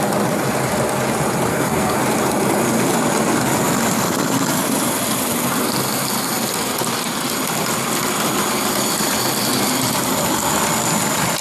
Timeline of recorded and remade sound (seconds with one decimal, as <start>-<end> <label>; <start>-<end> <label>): 0.0-1.5 recorded; 1.5-2.0 remade; 2.0-11.4 recorded